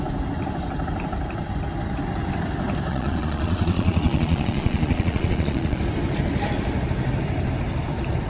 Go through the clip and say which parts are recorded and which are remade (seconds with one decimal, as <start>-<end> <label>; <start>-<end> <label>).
0.0-2.9 recorded; 2.9-5.8 remade; 5.8-8.3 recorded